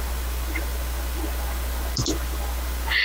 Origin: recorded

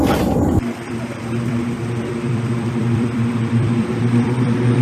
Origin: remade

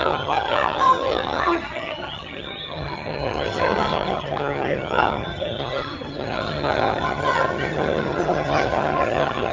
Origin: remade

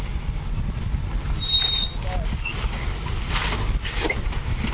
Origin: recorded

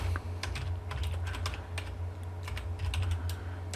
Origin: recorded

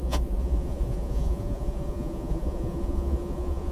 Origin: remade